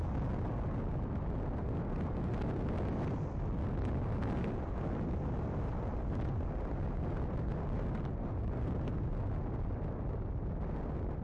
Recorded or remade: recorded